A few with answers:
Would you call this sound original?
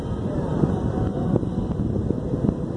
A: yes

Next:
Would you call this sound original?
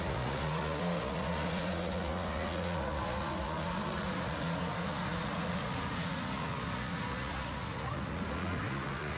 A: no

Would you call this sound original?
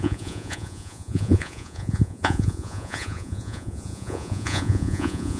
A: no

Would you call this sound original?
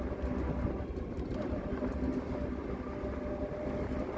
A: yes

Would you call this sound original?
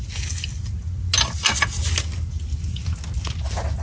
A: yes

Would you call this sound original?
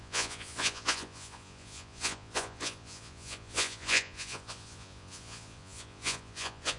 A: no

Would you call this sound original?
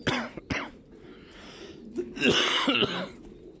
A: yes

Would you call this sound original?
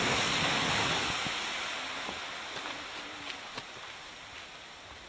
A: yes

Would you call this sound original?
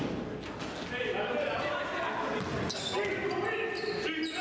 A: yes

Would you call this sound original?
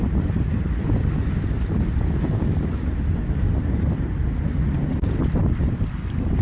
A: yes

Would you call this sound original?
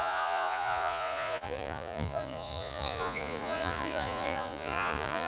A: no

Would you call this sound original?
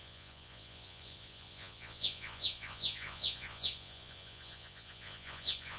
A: no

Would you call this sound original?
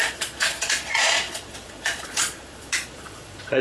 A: no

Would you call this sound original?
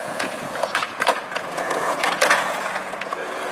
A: no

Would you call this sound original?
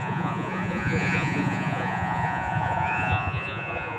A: no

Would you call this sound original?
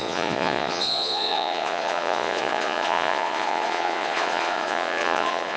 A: no